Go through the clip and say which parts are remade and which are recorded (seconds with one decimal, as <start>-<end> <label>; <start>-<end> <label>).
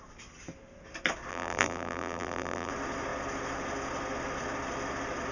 0.0-1.3 recorded; 1.3-2.7 remade; 2.7-5.3 recorded